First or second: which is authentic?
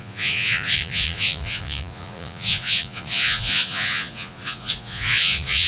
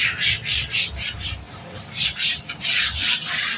second